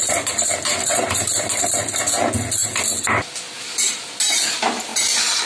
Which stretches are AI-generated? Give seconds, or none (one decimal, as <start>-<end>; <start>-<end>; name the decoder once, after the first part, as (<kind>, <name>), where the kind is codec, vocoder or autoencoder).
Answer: none